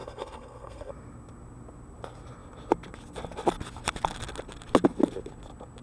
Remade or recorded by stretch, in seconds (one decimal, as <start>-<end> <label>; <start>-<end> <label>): 0.0-0.9 remade; 0.9-5.8 recorded